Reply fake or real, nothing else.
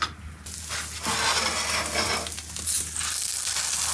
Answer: real